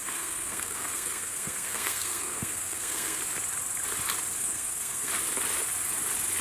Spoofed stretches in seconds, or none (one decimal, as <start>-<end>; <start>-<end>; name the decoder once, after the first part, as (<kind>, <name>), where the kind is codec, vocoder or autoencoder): 0.0-3.2 (codec, SNAC); 4.4-5.1